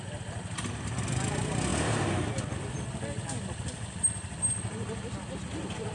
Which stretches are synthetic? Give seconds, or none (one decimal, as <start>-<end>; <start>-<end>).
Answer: none